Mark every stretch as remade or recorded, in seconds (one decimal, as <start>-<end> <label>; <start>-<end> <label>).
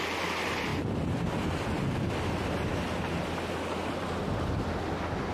0.0-5.3 recorded